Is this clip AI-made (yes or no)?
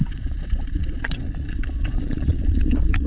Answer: yes